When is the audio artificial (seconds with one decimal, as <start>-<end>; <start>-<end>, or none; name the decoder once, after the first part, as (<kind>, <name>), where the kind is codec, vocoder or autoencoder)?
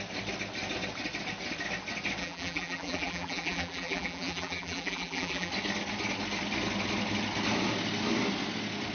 2.2-5.5 (vocoder, BigVGAN v2)